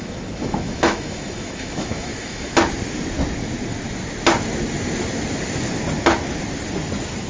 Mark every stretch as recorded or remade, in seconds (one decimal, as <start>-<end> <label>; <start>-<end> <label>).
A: 0.0-2.5 remade; 2.5-7.3 recorded